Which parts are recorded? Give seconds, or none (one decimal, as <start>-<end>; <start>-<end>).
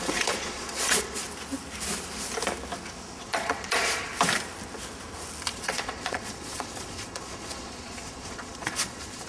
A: 1.2-3.2; 4.1-5.5